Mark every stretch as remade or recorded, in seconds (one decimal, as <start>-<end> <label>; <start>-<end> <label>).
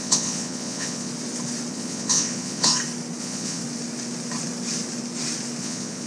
0.0-1.1 remade; 1.1-1.7 recorded; 1.7-2.7 remade; 2.7-3.2 recorded; 3.2-3.6 remade; 3.6-5.6 recorded; 5.6-6.1 remade